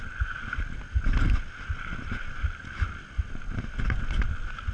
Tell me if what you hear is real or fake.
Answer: real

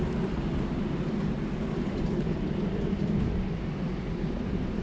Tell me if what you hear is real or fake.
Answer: real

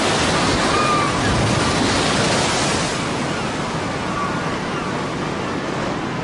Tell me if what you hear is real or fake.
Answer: real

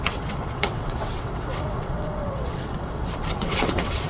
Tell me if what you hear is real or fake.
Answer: fake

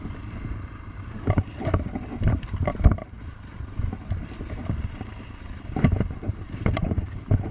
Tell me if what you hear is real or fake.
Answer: fake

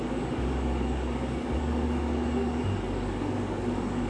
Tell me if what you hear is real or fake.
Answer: fake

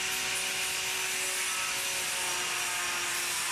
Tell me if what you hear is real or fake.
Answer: real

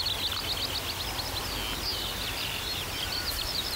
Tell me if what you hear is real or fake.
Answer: real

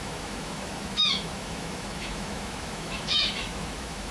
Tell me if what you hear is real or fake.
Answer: fake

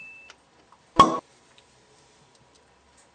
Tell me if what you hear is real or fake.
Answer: fake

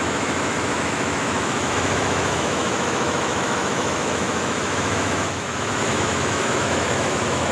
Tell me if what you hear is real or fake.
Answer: fake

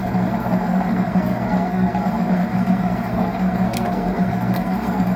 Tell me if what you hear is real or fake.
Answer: fake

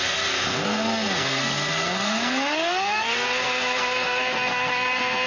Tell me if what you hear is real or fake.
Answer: fake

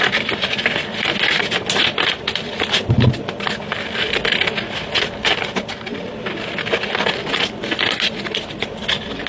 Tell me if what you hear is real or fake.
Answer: real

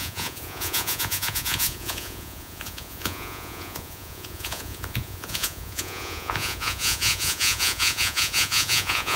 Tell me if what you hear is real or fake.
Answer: fake